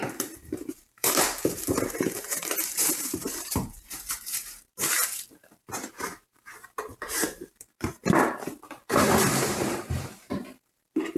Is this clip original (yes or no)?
no